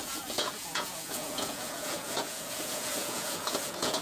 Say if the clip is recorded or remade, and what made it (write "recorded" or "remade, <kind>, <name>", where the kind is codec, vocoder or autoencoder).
remade, vocoder, Vocos